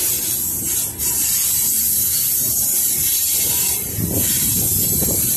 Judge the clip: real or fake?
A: real